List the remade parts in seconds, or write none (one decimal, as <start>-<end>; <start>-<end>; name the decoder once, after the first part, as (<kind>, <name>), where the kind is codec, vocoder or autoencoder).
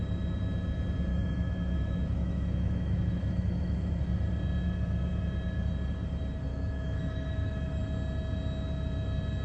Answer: 1.1-4.0 (autoencoder, DAC-VAE); 6.5-7.8